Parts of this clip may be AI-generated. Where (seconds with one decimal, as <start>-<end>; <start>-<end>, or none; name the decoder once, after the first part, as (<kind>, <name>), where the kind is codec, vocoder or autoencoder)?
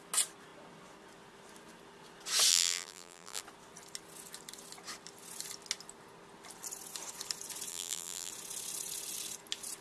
2.5-3.4 (vocoder, BigVGAN v2); 7.7-8.3